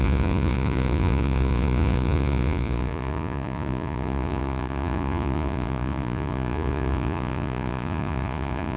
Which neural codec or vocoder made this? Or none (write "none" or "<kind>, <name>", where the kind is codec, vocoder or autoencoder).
vocoder, Vocos